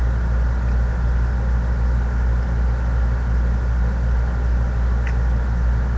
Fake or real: real